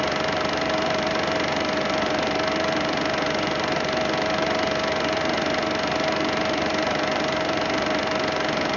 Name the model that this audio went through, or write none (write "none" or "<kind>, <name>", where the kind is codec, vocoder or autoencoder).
vocoder, BigVGAN v2